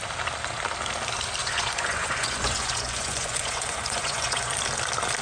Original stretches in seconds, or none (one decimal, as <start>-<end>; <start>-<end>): 0.0-1.4; 4.5-5.2